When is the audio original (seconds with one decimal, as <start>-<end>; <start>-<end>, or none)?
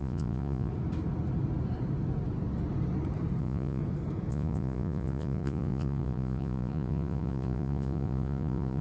0.7-3.4; 3.8-4.3